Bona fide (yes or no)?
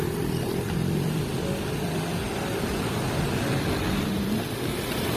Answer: yes